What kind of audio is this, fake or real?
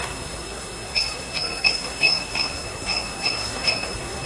fake